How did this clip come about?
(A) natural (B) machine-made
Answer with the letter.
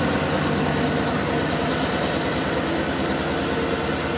A